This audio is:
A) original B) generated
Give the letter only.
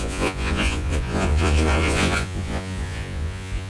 B